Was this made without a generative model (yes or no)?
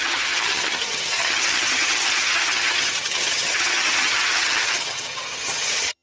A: no